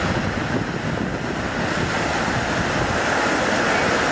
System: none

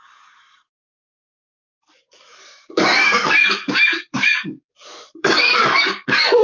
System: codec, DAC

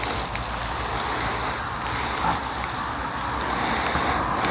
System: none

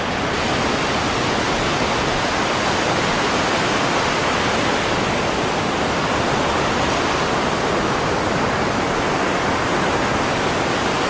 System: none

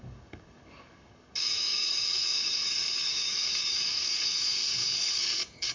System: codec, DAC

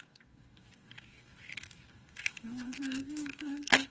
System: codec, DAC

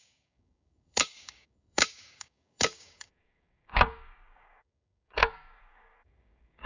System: codec, DAC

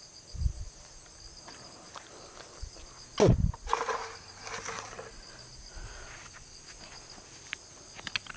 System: none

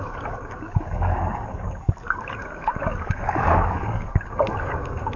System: codec, DAC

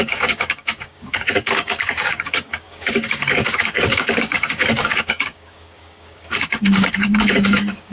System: codec, DAC